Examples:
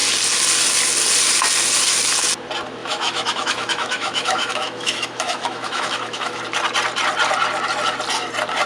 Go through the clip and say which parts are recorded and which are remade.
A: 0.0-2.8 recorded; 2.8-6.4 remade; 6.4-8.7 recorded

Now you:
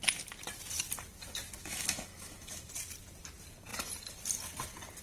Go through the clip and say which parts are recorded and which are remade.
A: 0.0-1.6 recorded; 1.6-2.7 remade; 2.7-5.0 recorded

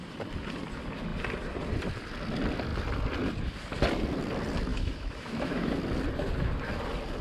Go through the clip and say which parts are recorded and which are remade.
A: 0.0-4.7 recorded; 4.7-5.7 remade; 5.7-7.2 recorded